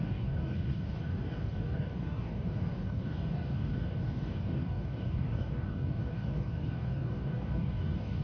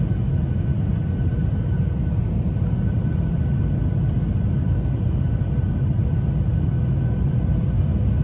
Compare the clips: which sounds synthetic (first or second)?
first